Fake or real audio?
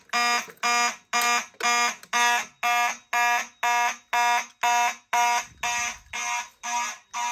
real